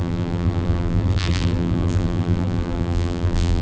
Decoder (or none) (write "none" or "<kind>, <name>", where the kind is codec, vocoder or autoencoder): vocoder, BigVGAN v2